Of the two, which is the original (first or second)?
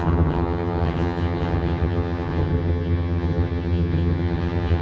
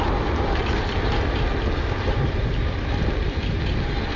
second